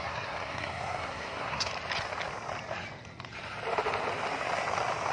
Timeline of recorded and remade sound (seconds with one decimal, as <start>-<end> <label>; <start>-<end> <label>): 0.0-1.7 remade; 1.7-5.1 recorded